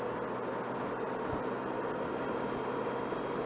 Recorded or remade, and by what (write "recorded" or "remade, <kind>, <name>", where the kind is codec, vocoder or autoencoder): recorded